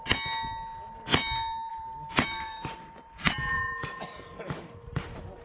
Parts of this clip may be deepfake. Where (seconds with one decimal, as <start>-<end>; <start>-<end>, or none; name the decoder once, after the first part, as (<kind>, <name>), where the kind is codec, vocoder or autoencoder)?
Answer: 1.7-3.9 (vocoder, BigVGAN v2)